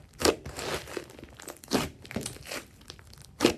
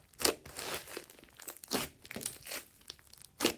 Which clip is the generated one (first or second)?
first